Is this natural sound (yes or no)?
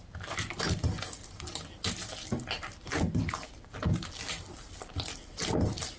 yes